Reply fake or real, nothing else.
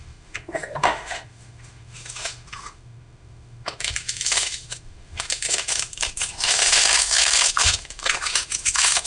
fake